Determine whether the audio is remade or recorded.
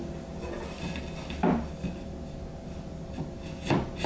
recorded